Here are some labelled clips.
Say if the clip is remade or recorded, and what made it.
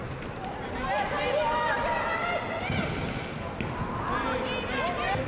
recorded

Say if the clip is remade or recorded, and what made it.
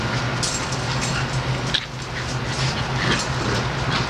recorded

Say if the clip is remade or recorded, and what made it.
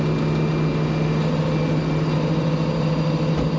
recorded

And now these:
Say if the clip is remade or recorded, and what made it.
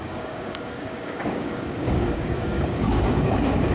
remade, codec, DAC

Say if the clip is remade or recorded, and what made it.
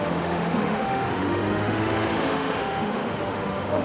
remade, autoencoder, DAC-VAE